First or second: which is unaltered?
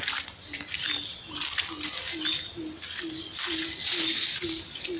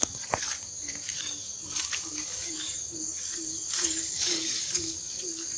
first